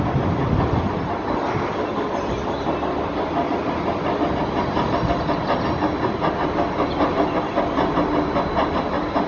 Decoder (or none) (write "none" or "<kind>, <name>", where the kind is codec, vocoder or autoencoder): none